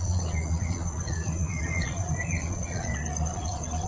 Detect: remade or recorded remade